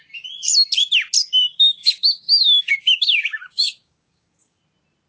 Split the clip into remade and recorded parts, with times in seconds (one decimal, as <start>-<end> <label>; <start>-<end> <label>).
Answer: 0.0-1.5 recorded; 1.5-4.6 remade; 4.6-5.1 recorded

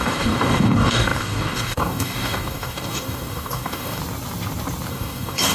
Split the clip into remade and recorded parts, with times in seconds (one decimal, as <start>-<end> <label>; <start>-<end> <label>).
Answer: 0.0-4.0 remade; 4.0-4.9 recorded; 4.9-5.5 remade

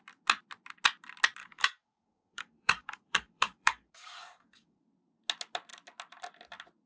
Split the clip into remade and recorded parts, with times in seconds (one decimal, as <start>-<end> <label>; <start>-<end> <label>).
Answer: 0.0-1.4 recorded; 1.4-4.8 remade; 4.8-6.9 recorded

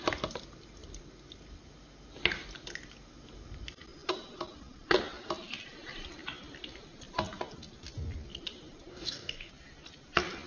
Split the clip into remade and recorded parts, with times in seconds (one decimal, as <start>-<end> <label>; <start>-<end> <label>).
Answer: 0.0-8.9 recorded; 8.9-9.5 remade; 9.5-10.5 recorded